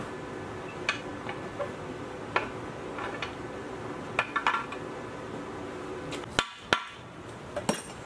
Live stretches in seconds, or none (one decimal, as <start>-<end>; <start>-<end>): 0.0-1.1; 2.2-8.1